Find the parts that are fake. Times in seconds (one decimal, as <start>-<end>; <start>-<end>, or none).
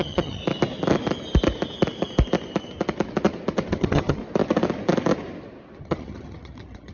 0.0-0.4; 3.7-4.2; 5.8-6.9